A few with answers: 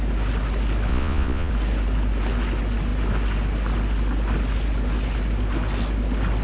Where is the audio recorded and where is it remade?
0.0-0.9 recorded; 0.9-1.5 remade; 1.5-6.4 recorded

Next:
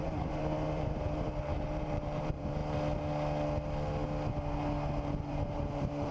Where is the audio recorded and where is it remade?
0.0-2.6 remade; 2.6-5.3 recorded; 5.3-6.1 remade

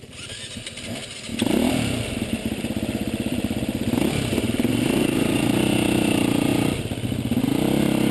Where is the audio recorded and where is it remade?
0.0-1.3 recorded; 1.3-4.4 remade; 4.4-8.1 recorded

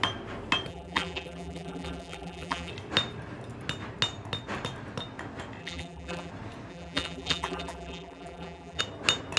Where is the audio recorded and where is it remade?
0.0-0.7 recorded; 0.7-2.7 remade; 2.7-5.6 recorded; 5.6-6.3 remade; 6.3-6.7 recorded; 6.7-8.8 remade; 8.8-9.4 recorded

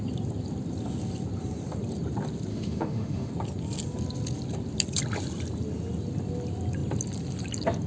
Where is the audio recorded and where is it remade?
0.0-2.5 recorded; 2.5-3.3 remade; 3.3-7.9 recorded